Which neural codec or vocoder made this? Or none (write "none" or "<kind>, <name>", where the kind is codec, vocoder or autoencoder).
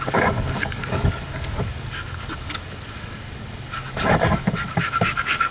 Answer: codec, DAC